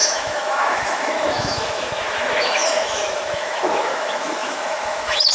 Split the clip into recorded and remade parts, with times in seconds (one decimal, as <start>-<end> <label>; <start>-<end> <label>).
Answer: 0.0-5.3 remade